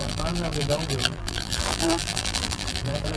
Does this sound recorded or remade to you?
remade